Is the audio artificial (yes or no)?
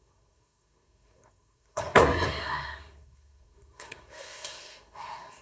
yes